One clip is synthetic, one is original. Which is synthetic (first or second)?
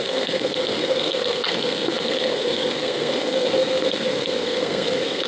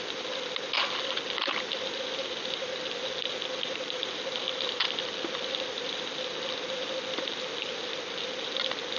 first